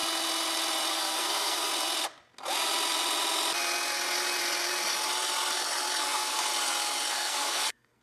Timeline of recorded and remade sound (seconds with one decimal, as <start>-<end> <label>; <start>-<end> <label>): 0.0-0.9 recorded; 0.9-1.7 remade; 1.7-6.0 recorded; 6.0-6.5 remade; 6.5-7.1 recorded; 7.1-8.0 remade